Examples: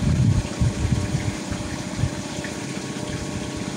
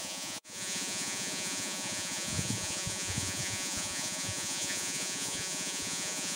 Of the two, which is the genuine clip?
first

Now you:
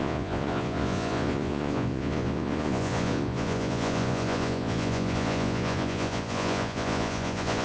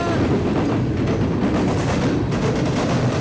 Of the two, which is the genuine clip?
second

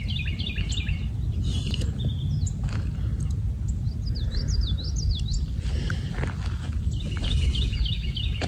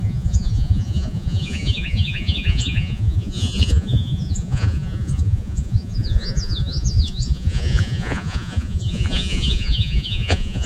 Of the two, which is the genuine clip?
first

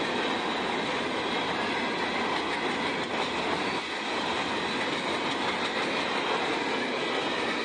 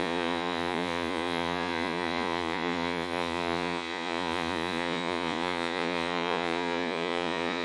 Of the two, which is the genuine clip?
first